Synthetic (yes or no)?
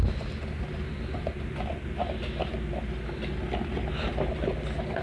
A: no